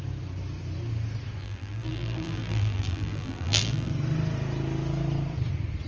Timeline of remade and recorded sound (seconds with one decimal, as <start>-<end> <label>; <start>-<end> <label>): 0.0-1.4 recorded; 1.4-3.9 remade; 3.9-5.9 recorded